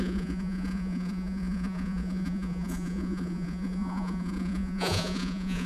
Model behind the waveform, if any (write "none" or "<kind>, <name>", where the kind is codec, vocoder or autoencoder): vocoder, Vocos